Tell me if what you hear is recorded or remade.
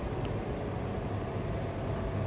recorded